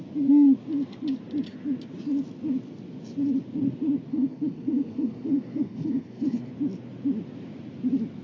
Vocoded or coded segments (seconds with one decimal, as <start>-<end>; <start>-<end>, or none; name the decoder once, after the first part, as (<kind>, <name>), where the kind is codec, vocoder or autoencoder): 4.1-6.5 (codec, SNAC)